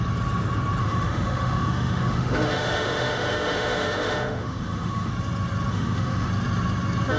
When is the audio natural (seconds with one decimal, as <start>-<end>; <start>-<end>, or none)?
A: 0.0-0.8; 5.1-5.7; 6.3-7.2